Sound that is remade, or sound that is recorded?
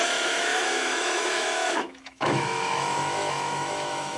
remade